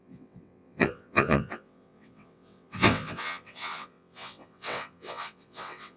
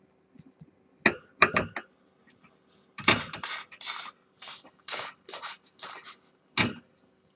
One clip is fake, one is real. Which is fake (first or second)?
first